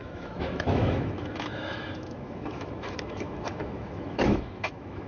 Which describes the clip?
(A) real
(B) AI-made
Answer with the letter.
B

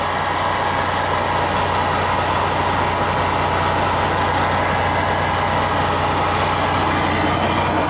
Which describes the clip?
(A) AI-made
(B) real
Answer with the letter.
B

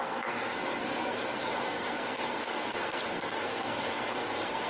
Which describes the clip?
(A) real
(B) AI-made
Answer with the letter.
B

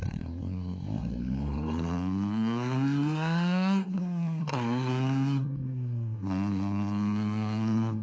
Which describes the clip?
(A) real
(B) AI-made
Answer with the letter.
B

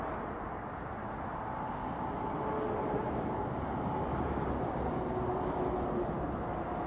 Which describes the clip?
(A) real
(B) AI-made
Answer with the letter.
A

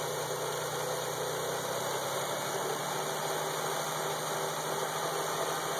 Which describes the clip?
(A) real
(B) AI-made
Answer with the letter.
A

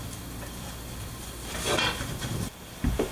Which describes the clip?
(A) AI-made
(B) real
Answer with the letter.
B